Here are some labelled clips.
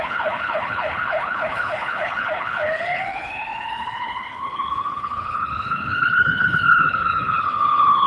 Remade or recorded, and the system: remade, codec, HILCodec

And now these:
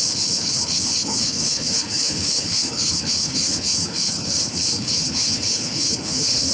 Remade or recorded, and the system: remade, codec, HILCodec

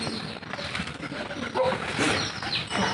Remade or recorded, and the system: recorded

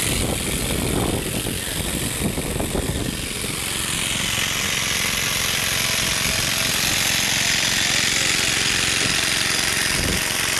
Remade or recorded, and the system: recorded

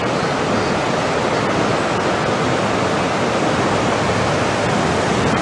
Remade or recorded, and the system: recorded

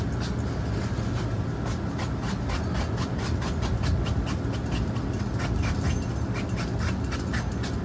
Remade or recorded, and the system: recorded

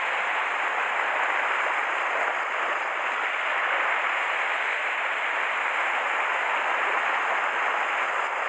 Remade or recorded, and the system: recorded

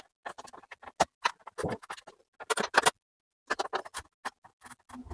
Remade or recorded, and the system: recorded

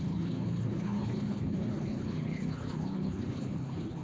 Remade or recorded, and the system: remade, codec, HILCodec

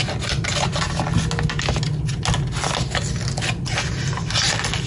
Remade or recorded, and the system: recorded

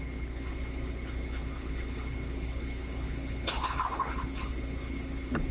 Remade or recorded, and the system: remade, codec, HILCodec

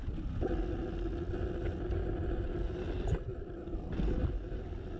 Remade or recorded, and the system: recorded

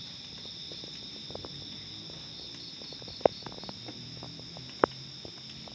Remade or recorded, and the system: recorded